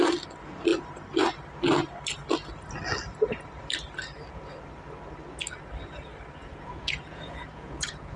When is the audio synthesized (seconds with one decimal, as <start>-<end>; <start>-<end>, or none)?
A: 6.4-8.2